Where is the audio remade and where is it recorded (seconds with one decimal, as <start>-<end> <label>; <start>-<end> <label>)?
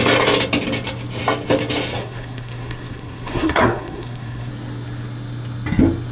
0.0-2.0 recorded; 2.0-4.5 remade; 4.5-6.1 recorded